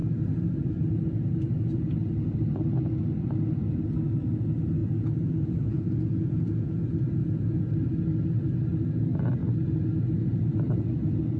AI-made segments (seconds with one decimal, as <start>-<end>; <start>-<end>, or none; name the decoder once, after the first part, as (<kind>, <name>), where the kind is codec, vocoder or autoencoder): 4.8-7.7 (vocoder, Vocos)